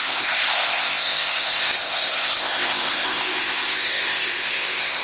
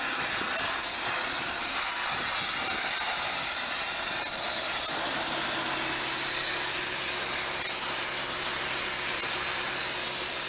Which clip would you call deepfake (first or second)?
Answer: first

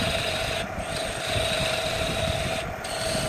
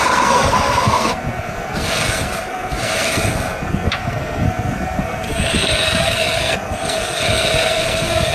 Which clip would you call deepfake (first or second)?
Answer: second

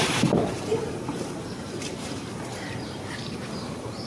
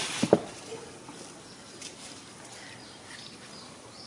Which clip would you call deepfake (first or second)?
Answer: first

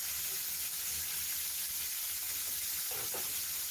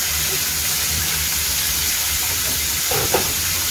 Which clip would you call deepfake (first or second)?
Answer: second